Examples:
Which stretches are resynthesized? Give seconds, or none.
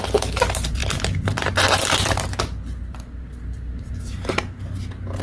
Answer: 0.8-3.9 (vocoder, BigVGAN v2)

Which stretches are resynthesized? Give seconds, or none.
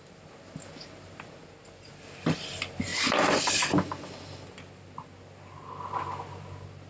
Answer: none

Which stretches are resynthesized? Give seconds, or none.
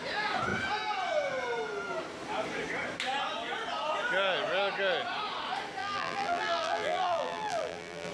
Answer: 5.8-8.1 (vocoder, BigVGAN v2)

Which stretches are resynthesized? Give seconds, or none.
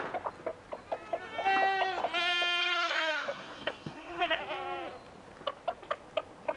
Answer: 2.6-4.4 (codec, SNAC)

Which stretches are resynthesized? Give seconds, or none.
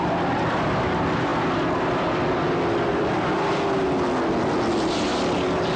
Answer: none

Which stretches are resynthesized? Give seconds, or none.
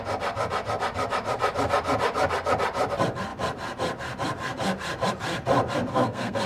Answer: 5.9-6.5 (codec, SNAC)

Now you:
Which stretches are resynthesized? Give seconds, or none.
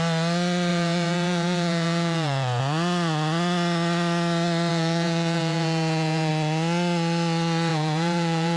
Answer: 0.7-2.6 (vocoder, Vocos); 4.7-6.3; 7.7-8.6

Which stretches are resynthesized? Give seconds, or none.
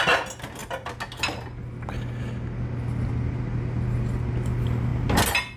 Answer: none